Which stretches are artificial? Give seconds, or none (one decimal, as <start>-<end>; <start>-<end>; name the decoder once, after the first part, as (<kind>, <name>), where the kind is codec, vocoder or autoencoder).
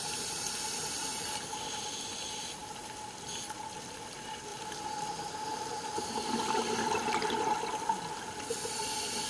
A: 4.5-6.1 (vocoder, BigVGAN v2)